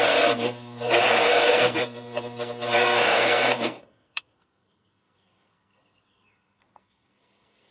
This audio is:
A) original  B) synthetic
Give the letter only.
B